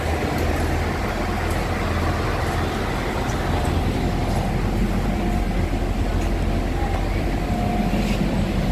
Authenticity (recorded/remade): recorded